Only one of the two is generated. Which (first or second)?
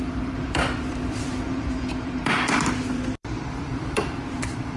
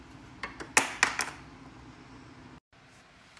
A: first